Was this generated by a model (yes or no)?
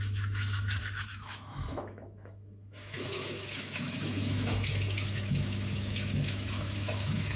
yes